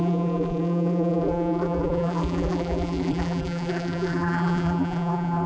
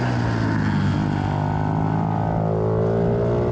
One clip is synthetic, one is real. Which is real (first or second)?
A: second